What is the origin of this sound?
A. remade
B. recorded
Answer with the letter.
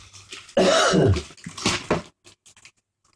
B